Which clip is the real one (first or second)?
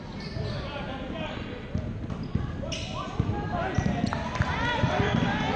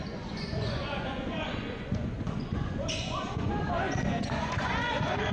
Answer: first